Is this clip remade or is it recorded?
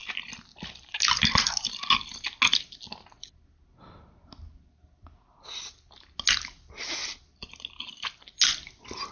recorded